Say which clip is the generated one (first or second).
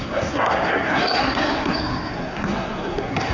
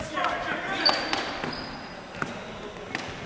first